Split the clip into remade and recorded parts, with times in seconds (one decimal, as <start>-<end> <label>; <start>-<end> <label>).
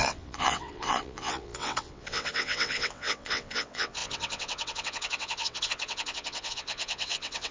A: 0.0-7.5 remade